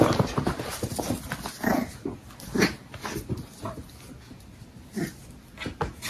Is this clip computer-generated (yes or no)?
no